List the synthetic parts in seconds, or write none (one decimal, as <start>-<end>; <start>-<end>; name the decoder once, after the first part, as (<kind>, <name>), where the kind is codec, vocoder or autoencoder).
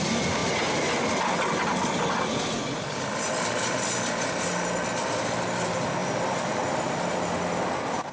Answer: 6.0-6.8 (vocoder, BigVGAN v2)